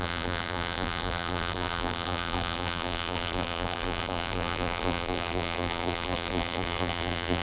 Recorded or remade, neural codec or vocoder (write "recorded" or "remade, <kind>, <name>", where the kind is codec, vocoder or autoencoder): remade, vocoder, BigVGAN v2